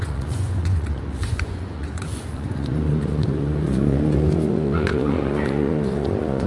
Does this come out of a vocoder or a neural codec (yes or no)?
yes